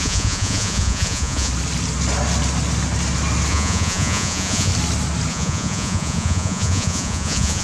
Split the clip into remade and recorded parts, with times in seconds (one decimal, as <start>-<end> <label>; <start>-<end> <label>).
0.0-1.5 remade; 1.5-3.5 recorded; 3.5-4.7 remade; 4.7-5.3 recorded; 5.3-7.6 remade